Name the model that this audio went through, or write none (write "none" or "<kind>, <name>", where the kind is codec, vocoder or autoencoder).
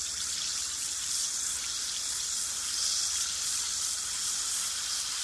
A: none